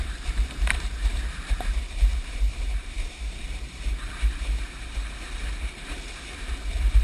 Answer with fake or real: fake